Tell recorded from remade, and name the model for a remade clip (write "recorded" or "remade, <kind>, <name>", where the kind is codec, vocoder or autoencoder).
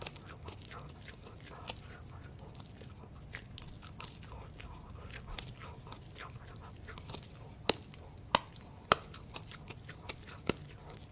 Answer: recorded